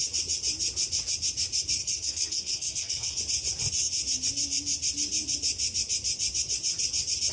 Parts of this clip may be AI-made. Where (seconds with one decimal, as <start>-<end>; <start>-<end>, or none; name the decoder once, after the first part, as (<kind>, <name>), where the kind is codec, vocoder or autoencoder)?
1.8-3.2 (codec, SNAC)